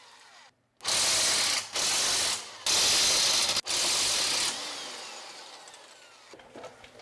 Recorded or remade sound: recorded